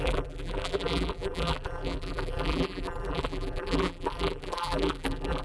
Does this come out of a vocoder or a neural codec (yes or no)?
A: yes